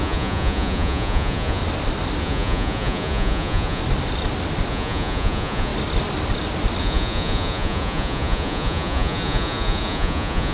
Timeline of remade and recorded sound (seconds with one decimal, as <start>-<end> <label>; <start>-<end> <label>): 0.0-1.6 remade; 1.6-2.2 recorded; 2.2-3.8 remade; 3.8-4.7 recorded; 4.7-5.7 remade; 5.7-6.8 recorded; 6.8-10.5 remade